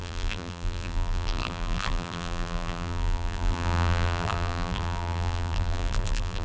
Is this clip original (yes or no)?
no